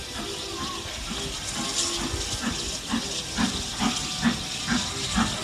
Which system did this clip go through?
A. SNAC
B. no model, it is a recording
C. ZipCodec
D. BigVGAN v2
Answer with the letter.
B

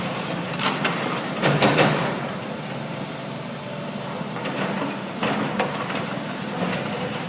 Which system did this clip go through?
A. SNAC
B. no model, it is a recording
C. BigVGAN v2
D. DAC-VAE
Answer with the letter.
C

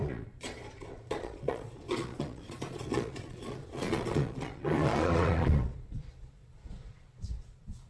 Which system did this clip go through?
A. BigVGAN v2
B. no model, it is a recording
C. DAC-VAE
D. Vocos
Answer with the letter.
D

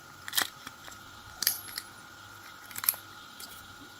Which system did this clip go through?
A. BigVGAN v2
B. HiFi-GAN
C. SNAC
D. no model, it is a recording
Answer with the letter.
A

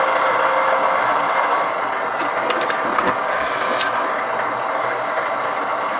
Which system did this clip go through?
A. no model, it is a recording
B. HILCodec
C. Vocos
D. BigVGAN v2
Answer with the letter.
A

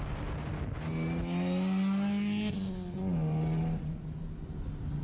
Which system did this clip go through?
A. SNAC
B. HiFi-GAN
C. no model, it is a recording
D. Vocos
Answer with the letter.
C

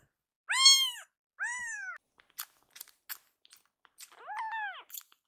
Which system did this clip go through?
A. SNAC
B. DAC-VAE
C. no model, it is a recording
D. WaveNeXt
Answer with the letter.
C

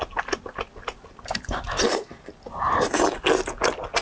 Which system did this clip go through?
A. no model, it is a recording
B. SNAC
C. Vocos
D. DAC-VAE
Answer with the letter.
A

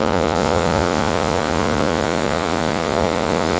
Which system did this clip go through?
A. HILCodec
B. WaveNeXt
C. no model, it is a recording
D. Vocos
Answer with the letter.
D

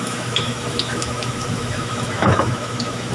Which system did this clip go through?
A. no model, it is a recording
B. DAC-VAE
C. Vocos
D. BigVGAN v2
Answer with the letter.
B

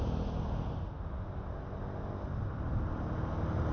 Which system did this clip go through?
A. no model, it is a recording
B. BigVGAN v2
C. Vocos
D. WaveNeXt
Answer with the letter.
A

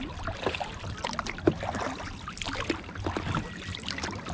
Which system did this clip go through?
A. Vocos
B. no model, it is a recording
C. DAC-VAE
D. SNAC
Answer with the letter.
B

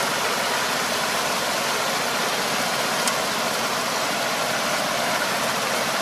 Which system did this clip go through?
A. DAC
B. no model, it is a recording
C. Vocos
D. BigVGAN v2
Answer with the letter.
B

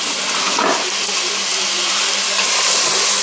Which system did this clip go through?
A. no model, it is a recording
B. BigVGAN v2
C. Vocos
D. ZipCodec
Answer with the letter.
A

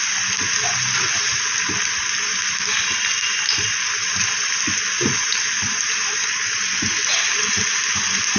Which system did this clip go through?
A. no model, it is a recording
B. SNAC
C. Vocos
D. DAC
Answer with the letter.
A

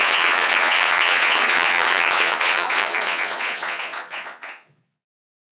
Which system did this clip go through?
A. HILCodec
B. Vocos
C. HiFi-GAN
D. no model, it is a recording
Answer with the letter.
B